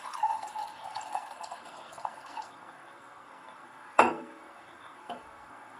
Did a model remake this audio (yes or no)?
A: yes